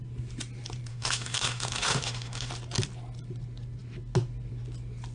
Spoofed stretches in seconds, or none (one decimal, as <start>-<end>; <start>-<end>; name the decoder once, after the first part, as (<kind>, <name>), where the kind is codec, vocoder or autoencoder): 0.9-2.5 (autoencoder, DAC-VAE)